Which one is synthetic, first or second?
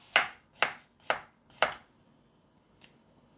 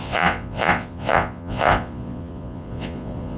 second